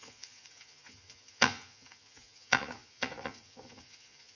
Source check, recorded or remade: remade